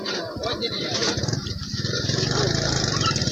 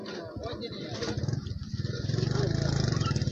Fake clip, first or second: first